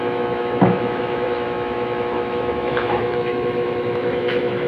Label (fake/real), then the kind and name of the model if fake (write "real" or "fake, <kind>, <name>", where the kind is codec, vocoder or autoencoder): fake, autoencoder, DAC-VAE